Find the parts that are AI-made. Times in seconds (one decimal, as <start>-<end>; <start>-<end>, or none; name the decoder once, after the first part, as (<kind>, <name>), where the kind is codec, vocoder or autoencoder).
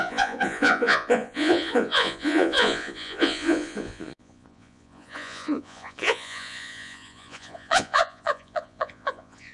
0.0-9.5 (vocoder, Vocos)